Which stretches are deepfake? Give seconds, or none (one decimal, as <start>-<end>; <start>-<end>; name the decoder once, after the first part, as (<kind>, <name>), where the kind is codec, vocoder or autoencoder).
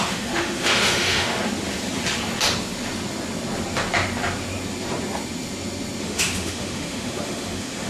0.0-1.3 (autoencoder, DAC-VAE); 6.0-7.9